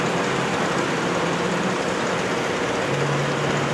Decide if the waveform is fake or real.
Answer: real